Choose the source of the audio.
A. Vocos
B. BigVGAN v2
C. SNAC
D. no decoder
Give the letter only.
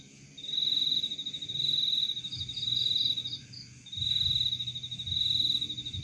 D